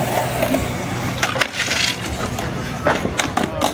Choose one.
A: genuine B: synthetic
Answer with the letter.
A